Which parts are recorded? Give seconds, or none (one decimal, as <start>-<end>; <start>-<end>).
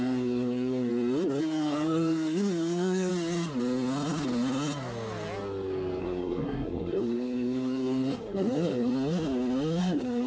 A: 0.9-1.4; 3.1-6.0; 8.9-9.8